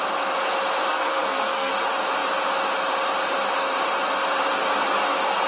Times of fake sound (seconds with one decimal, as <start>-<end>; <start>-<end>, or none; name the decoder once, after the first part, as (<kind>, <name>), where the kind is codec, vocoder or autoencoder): 0.9-1.7 (codec, SNAC)